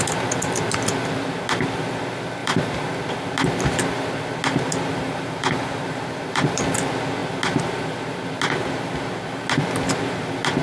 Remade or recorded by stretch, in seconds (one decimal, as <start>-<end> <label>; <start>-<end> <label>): 0.0-2.4 recorded; 2.4-2.9 remade; 2.9-4.9 recorded; 4.9-6.6 remade; 6.6-10.6 recorded